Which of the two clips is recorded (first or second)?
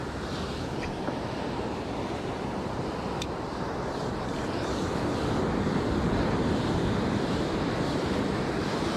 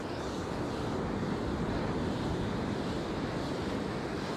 second